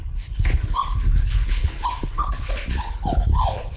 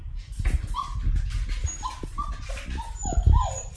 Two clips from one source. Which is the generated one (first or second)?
first